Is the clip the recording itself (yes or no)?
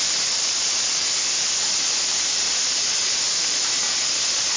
no